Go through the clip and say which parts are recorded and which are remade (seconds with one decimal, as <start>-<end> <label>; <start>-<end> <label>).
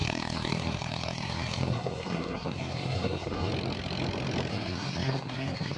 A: 0.0-3.5 remade; 3.5-4.5 recorded; 4.5-5.8 remade